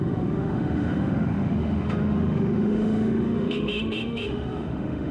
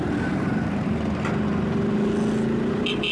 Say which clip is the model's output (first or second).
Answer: first